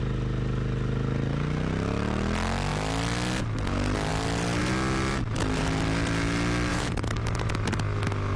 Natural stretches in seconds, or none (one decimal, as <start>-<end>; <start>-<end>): 0.0-6.7; 7.5-8.4